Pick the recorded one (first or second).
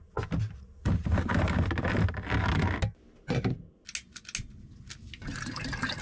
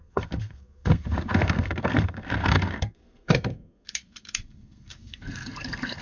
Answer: first